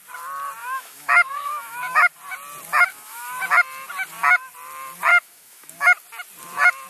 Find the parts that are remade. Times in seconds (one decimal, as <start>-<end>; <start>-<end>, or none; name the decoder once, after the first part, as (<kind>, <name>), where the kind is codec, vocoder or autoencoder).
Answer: 0.6-2.1 (autoencoder, DAC-VAE); 2.9-3.4; 5.1-5.7